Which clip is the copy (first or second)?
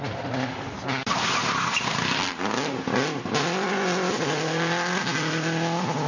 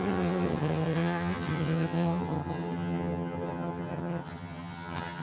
second